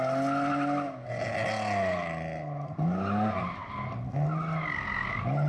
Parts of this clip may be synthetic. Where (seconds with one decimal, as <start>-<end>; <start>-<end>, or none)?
none